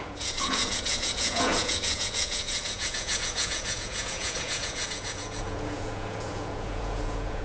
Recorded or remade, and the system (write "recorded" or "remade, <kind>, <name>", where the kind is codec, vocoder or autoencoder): remade, vocoder, Vocos